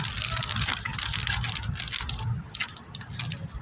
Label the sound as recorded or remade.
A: recorded